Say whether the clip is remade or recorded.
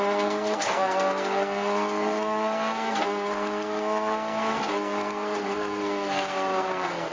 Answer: remade